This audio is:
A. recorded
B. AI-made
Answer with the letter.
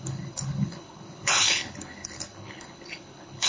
B